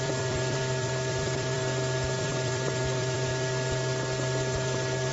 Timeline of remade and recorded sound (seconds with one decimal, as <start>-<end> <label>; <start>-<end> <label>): 0.0-1.6 remade; 1.6-2.2 recorded; 2.2-3.3 remade; 3.3-5.1 recorded